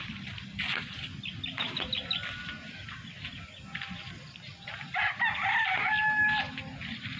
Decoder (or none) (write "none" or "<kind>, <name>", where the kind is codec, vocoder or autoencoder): none